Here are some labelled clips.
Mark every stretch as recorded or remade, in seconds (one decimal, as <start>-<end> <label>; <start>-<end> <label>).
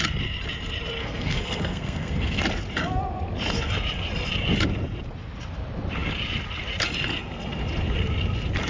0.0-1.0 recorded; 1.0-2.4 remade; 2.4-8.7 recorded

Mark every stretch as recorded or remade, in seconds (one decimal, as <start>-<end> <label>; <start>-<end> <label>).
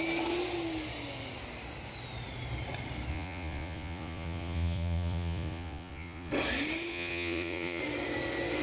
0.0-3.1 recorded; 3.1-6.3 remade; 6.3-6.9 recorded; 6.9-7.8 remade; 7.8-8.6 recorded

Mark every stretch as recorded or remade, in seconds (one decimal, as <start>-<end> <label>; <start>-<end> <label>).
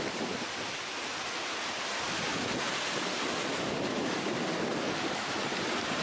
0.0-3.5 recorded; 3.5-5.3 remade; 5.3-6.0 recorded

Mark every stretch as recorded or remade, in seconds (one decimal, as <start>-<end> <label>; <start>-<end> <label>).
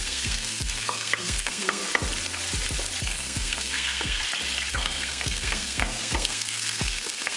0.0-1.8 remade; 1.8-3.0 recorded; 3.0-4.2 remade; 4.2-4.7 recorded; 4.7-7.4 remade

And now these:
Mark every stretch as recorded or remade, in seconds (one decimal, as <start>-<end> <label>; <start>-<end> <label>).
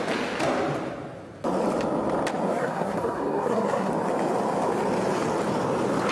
0.0-2.6 recorded; 2.6-3.9 remade; 3.9-6.1 recorded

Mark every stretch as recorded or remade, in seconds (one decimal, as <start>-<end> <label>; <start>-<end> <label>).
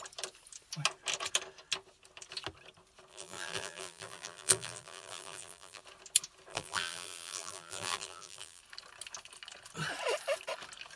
0.0-3.1 recorded; 3.1-5.8 remade; 5.8-6.5 recorded; 6.5-8.6 remade; 8.6-11.0 recorded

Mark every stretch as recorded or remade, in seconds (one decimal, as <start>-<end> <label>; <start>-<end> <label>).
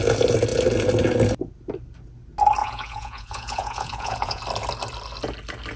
0.0-2.6 recorded; 2.6-4.4 remade; 4.4-5.8 recorded